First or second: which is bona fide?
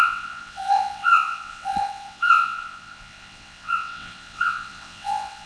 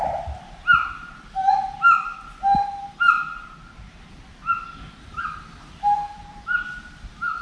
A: second